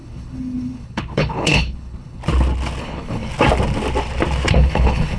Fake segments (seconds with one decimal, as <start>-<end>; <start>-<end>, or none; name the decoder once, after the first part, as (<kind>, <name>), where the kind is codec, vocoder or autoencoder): 0.0-2.2 (codec, HILCodec); 2.8-3.3; 4.5-5.2